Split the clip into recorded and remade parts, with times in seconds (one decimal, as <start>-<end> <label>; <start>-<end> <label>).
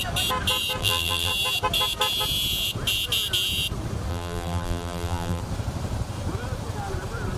0.0-0.8 recorded; 0.8-1.3 remade; 1.3-4.1 recorded; 4.1-5.4 remade; 5.4-7.4 recorded